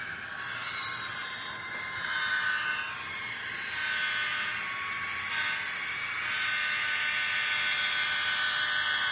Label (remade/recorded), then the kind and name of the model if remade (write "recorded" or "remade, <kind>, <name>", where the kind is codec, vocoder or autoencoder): recorded